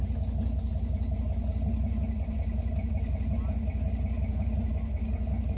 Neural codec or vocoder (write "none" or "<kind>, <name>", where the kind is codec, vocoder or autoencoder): none